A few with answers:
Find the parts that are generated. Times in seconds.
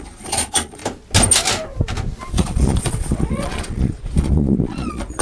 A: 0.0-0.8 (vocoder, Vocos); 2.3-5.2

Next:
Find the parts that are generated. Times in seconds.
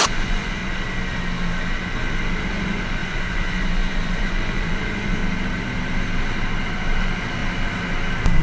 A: 0.0-0.6 (vocoder, Vocos); 2.5-5.2; 7.0-7.4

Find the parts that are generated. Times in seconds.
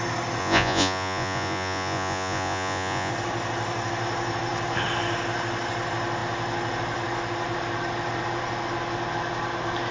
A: 0.4-3.1 (vocoder, Vocos)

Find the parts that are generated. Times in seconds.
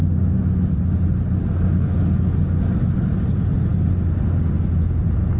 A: none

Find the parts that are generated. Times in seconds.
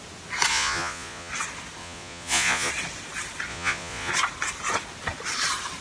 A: 0.5-1.3 (vocoder, Vocos); 1.8-2.7; 3.5-4.1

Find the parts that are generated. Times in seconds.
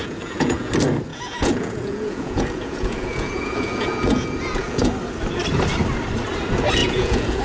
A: 0.0-0.7 (vocoder, Vocos); 1.1-4.9; 6.8-7.4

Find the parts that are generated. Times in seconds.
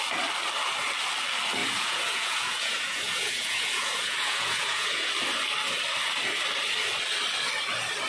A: 1.6-5.1 (vocoder, Vocos)